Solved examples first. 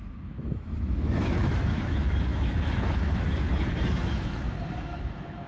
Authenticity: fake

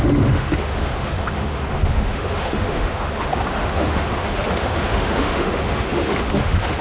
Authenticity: fake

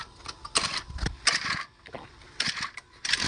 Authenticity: real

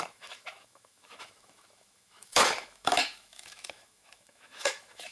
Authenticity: fake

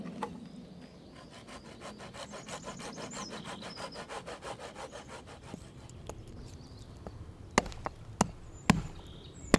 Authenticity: real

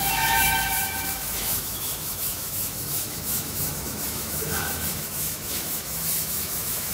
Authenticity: fake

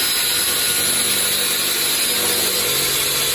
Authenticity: real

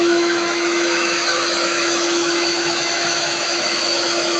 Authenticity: fake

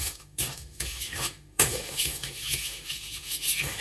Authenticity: fake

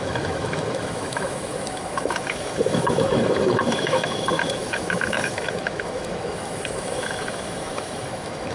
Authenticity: fake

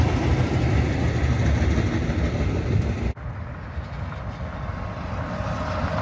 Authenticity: real